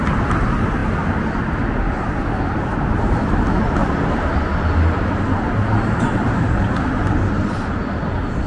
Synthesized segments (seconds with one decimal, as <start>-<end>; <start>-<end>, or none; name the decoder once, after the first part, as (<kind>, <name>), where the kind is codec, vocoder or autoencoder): 3.8-4.3 (vocoder, BigVGAN v2); 5.7-6.5